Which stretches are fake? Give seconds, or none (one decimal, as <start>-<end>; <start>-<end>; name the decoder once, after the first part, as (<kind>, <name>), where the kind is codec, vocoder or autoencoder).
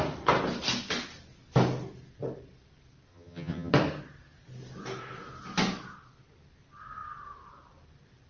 3.1-3.7 (vocoder, HiFi-GAN)